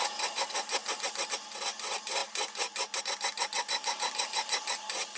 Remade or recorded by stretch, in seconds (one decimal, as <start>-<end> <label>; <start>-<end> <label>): 0.0-0.8 recorded; 0.8-1.3 remade; 1.3-5.2 recorded